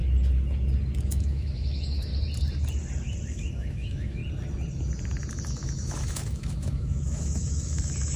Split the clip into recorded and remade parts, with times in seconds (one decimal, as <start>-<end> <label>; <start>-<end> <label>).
0.0-1.0 recorded; 1.0-2.1 remade; 2.1-3.3 recorded; 3.3-4.2 remade; 4.2-5.3 recorded; 5.3-8.2 remade